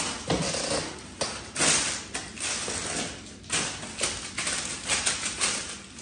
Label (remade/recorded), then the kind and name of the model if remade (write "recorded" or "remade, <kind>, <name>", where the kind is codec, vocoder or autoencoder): recorded